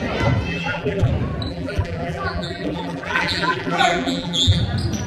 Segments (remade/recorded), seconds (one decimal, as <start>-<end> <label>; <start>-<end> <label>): 0.0-0.5 recorded; 0.5-1.1 remade; 1.1-1.5 recorded; 1.5-4.6 remade; 4.6-5.1 recorded